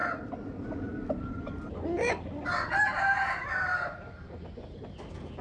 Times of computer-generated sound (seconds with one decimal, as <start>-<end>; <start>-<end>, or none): none